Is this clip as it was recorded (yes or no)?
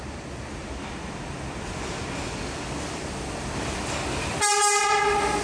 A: yes